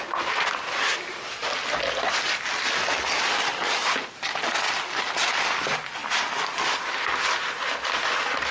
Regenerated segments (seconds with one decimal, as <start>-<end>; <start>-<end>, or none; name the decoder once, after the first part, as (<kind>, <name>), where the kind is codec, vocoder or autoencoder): none